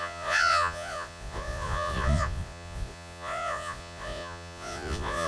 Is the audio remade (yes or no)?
yes